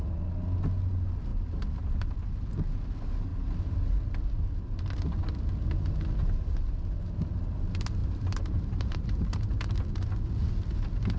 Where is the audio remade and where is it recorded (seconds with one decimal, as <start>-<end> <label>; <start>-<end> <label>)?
0.0-8.0 recorded; 8.0-9.4 remade; 9.4-11.2 recorded